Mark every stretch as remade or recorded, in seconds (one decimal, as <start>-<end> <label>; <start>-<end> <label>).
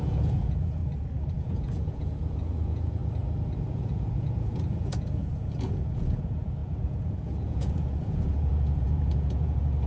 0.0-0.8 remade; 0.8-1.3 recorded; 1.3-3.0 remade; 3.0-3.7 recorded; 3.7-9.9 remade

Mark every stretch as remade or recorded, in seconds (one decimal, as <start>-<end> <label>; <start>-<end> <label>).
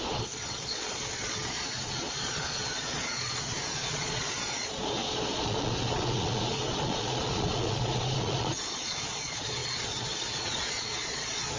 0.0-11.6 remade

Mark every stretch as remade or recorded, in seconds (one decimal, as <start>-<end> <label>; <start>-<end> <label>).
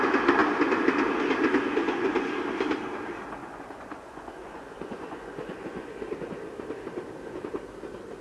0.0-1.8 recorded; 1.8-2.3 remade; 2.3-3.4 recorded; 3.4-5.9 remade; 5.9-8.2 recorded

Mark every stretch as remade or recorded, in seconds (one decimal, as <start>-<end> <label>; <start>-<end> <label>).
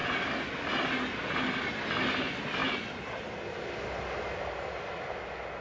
0.0-5.6 recorded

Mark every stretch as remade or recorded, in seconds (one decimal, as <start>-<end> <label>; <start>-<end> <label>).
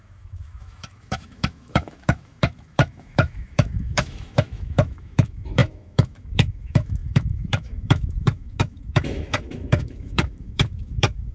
0.0-11.3 remade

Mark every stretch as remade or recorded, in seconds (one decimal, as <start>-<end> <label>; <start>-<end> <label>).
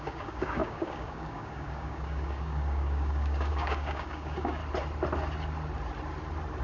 0.0-4.6 remade; 4.6-6.6 recorded